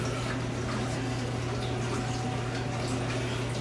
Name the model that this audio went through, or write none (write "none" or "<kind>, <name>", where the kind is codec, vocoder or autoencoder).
none